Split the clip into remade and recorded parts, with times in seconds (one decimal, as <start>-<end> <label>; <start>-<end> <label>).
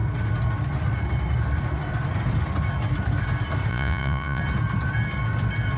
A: 0.0-3.7 recorded; 3.7-4.4 remade; 4.4-5.8 recorded